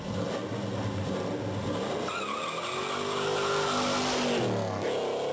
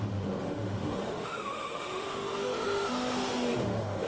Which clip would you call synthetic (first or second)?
second